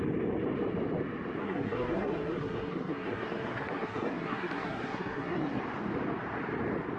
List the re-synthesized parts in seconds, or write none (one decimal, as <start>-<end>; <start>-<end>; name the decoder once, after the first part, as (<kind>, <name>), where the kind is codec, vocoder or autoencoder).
1.4-5.6 (codec, SNAC)